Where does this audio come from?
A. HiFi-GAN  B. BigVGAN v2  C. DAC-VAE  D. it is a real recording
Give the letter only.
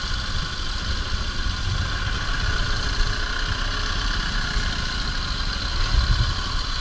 D